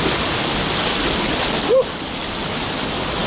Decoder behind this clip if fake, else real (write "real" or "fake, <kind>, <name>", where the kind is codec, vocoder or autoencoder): real